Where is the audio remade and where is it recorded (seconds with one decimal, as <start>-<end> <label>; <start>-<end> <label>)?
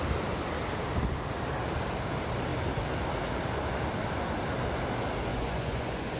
0.0-5.3 recorded; 5.3-6.2 remade